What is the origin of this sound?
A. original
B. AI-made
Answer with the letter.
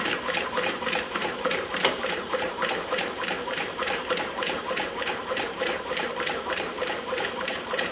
B